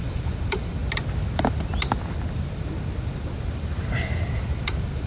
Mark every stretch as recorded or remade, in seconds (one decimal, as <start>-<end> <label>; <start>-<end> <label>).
0.0-0.8 remade; 0.8-3.5 recorded; 3.5-5.1 remade

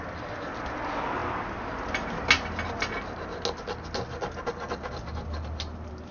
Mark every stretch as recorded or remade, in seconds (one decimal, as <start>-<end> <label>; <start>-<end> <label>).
0.0-6.1 recorded

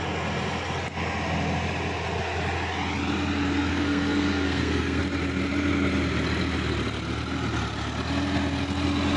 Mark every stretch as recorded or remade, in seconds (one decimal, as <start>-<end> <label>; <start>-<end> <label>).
0.0-3.7 recorded; 3.7-5.0 remade; 5.0-9.2 recorded

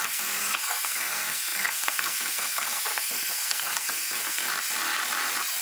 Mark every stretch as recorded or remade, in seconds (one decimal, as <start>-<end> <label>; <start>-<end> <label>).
0.0-4.5 remade; 4.5-5.6 recorded

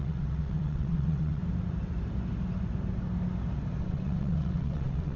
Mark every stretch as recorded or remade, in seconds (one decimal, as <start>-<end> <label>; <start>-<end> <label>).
0.0-1.4 remade; 1.4-3.8 recorded; 3.8-5.2 remade

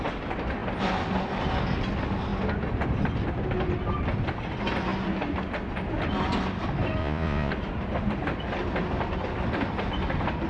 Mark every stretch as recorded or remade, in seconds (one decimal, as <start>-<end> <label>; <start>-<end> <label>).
0.0-7.0 recorded; 7.0-7.5 remade; 7.5-10.5 recorded